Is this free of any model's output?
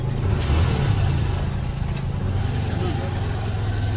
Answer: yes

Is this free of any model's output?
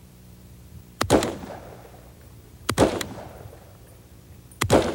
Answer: no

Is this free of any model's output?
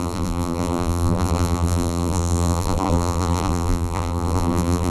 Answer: no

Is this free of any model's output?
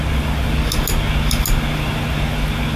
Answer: yes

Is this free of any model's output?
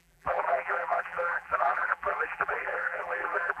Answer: no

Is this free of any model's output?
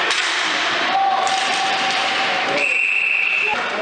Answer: no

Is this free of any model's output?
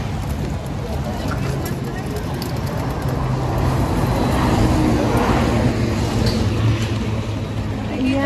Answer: yes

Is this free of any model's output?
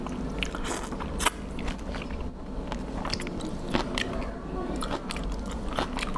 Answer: yes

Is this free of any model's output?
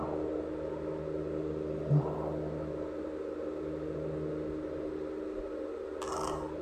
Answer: yes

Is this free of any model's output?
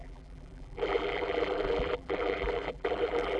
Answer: no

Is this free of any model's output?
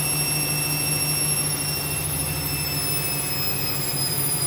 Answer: yes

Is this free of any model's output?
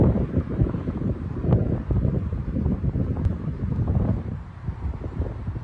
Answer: no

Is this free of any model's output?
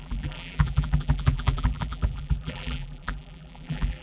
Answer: no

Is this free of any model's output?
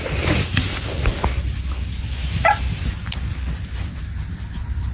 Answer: yes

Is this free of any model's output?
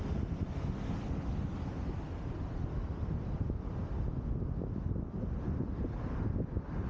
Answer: yes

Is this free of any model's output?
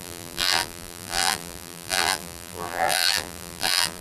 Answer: no